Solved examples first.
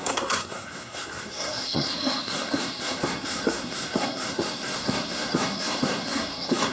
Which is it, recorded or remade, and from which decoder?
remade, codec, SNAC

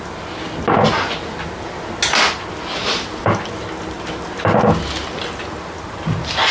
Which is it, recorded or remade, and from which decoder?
recorded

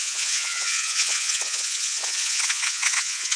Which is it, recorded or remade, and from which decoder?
remade, vocoder, Vocos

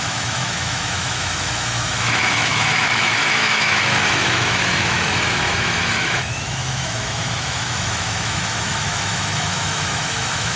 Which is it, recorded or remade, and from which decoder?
remade, autoencoder, DAC-VAE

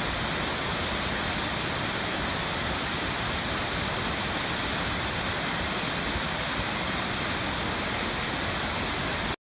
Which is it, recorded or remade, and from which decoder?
recorded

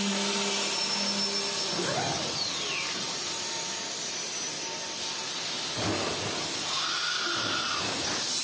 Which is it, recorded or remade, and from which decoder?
recorded